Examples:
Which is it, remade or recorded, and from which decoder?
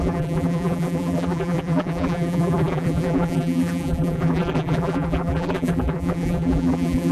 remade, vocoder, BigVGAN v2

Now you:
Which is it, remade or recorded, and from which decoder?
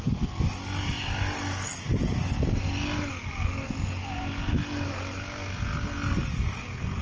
recorded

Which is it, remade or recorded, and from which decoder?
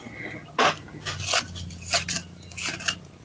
recorded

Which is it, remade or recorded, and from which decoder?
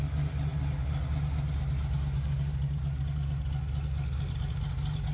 recorded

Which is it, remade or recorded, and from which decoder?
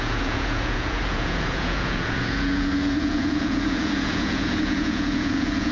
remade, vocoder, Vocos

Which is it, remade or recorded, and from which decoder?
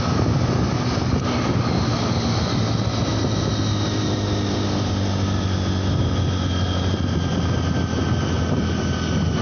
recorded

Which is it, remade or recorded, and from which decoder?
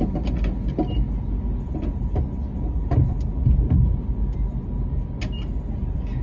recorded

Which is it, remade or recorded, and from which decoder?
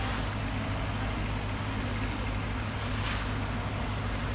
recorded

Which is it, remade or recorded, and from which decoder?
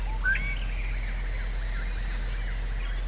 recorded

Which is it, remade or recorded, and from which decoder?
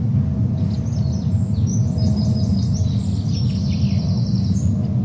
recorded